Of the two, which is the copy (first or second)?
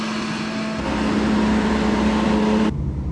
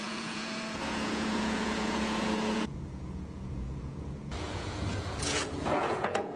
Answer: second